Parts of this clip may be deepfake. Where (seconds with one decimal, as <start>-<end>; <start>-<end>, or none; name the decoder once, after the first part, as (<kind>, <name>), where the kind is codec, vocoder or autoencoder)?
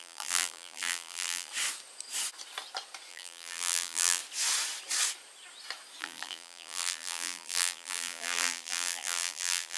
0.0-1.5 (vocoder, BigVGAN v2); 3.1-4.2; 6.0-9.8